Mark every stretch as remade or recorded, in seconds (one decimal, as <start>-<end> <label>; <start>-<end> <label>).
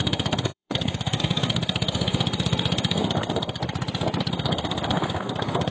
0.0-3.6 remade; 3.6-4.3 recorded; 4.3-5.7 remade